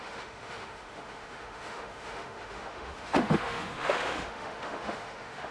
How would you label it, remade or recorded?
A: remade